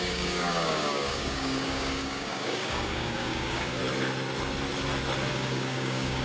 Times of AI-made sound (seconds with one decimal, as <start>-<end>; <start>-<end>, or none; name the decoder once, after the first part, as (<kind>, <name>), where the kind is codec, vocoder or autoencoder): 0.0-3.8 (codec, DAC); 5.3-6.2